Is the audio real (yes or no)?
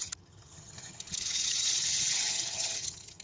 no